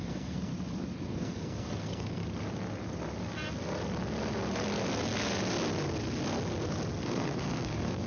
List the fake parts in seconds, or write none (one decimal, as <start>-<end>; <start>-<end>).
0.0-0.5; 1.1-2.2; 7.0-8.1